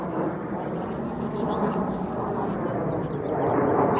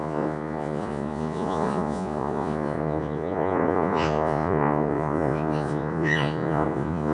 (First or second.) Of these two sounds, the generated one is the second